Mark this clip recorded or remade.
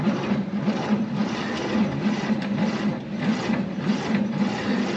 recorded